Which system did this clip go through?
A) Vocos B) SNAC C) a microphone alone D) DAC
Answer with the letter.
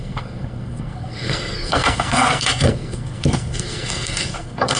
B